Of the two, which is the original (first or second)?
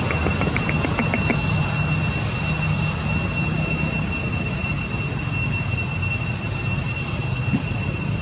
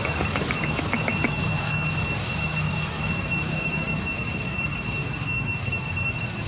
first